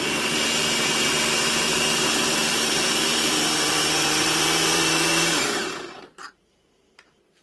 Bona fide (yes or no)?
no